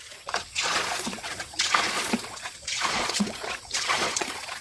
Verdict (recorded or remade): remade